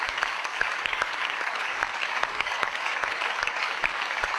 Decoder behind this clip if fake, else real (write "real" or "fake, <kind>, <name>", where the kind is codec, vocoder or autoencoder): fake, codec, DAC